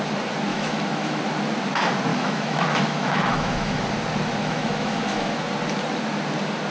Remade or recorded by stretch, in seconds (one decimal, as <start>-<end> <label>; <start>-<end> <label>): 0.0-0.5 recorded; 0.5-1.2 remade; 1.2-2.1 recorded; 2.1-3.8 remade; 3.8-4.4 recorded; 4.4-5.5 remade; 5.5-6.7 recorded

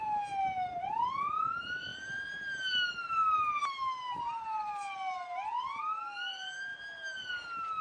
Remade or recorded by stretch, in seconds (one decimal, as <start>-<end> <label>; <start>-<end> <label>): 0.0-7.8 recorded

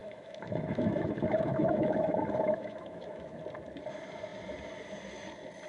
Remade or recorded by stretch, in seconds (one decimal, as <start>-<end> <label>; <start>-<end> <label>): 0.0-3.4 remade; 3.4-5.7 recorded

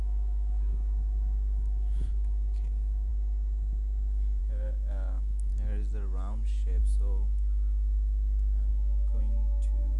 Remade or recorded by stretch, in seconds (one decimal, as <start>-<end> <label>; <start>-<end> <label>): 0.0-3.1 remade; 3.1-4.4 recorded; 4.4-5.5 remade; 5.5-6.8 recorded; 6.8-10.0 remade